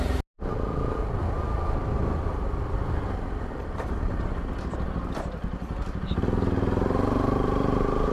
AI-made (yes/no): no